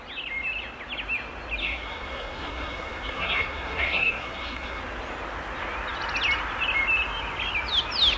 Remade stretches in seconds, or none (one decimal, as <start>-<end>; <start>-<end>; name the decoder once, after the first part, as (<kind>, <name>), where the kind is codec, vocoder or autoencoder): 1.6-4.8 (codec, SNAC)